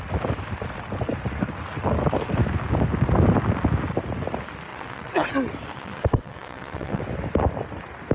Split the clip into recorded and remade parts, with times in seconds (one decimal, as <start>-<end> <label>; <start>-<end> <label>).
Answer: 0.0-4.7 recorded; 4.7-5.3 remade; 5.3-5.7 recorded; 5.7-7.0 remade; 7.0-8.1 recorded